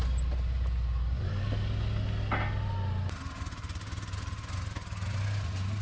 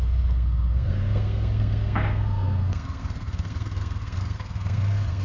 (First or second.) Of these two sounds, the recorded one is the first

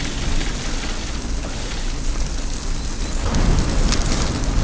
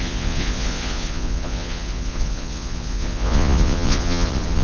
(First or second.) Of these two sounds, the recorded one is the first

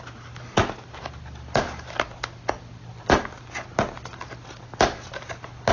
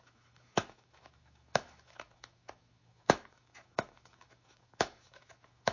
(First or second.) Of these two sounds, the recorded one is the first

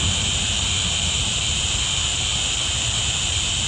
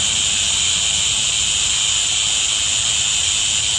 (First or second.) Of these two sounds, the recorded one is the second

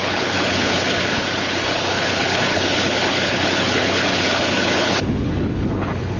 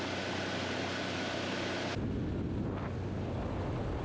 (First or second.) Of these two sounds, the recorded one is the second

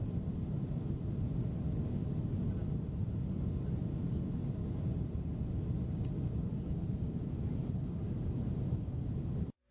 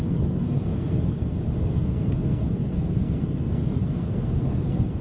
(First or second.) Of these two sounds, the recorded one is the first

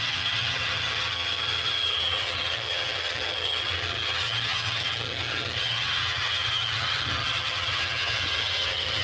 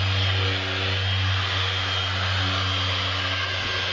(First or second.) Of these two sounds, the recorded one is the second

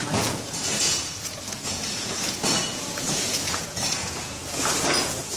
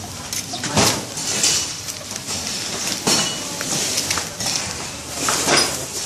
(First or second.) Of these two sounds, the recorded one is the second